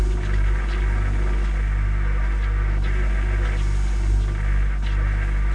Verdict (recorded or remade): recorded